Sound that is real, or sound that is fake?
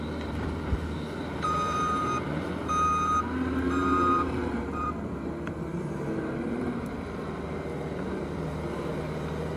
fake